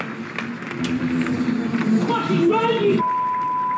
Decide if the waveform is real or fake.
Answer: real